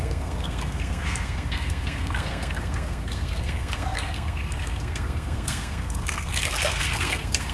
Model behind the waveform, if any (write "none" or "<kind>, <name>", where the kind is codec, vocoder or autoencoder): codec, SNAC